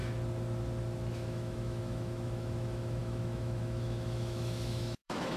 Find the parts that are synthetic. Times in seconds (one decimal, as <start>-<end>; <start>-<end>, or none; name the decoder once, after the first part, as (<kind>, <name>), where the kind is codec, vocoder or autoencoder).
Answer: 1.1-5.4 (autoencoder, DAC-VAE)